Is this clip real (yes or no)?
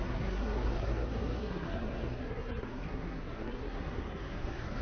no